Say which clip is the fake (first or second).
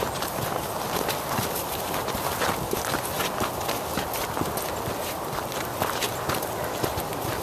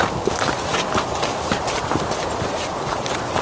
second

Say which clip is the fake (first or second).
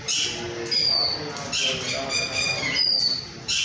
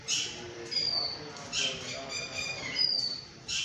second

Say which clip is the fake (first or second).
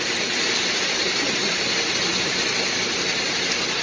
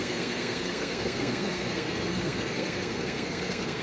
second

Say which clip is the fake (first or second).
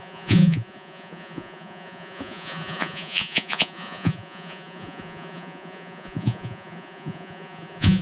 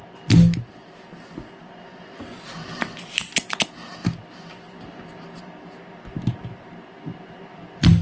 first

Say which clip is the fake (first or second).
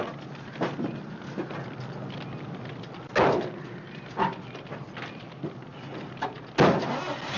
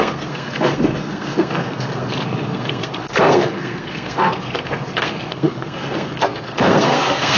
second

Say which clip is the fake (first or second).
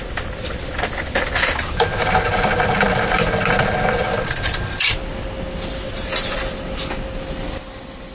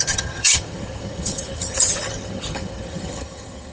second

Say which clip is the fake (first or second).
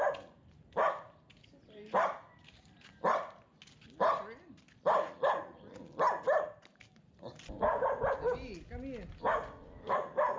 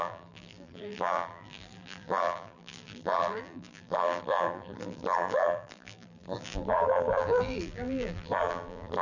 second